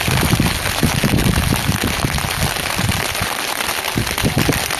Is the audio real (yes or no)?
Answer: yes